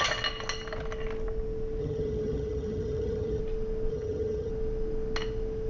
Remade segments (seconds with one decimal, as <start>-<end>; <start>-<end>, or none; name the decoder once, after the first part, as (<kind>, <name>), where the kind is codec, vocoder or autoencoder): 1.8-3.4 (vocoder, HiFi-GAN); 3.9-4.5